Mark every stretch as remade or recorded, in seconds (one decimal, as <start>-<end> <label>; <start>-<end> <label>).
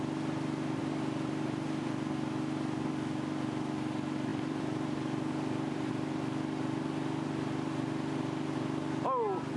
0.0-0.8 recorded; 0.8-1.9 remade; 1.9-4.3 recorded; 4.3-5.9 remade; 5.9-9.6 recorded